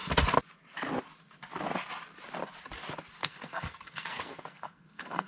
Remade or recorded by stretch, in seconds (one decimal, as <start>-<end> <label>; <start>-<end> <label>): 0.0-3.2 recorded; 3.2-5.3 remade